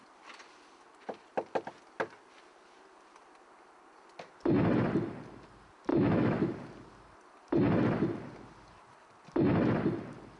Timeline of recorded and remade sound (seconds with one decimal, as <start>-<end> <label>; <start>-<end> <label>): 0.0-5.9 recorded; 5.9-6.5 remade; 6.5-10.4 recorded